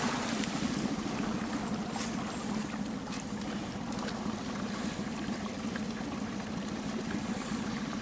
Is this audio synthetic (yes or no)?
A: yes